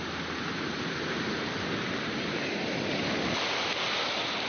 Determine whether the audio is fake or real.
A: real